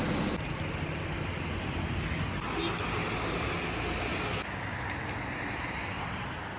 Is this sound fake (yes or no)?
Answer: no